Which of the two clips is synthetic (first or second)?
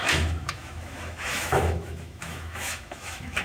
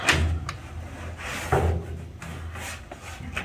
first